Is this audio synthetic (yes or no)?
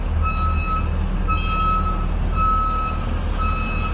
no